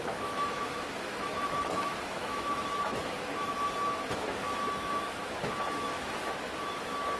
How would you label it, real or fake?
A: fake